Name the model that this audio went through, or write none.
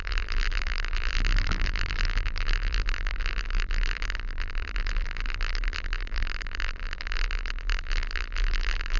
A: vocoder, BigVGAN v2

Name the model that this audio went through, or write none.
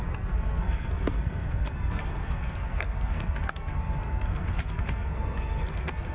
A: codec, SNAC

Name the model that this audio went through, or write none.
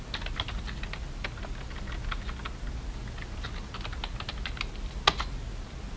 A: none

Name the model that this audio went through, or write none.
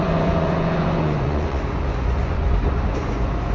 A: vocoder, Vocos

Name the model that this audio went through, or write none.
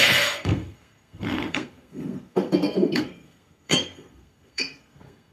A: codec, SNAC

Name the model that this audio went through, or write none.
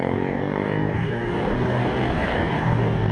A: codec, DAC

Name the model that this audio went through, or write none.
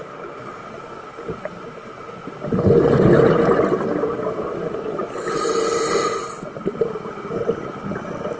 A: none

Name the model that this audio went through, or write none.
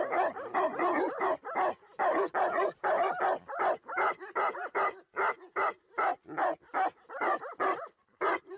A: none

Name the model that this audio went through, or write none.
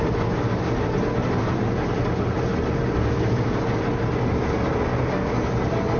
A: none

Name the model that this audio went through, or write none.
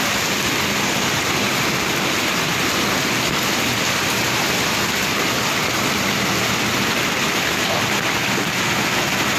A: none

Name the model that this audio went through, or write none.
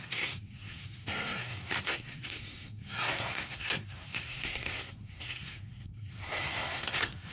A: codec, SNAC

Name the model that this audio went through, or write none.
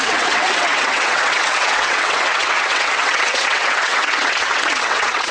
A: vocoder, WaveNeXt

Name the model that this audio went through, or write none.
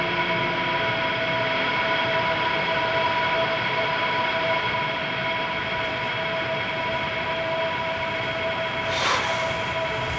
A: none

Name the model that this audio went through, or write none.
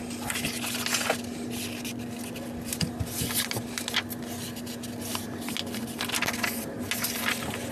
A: none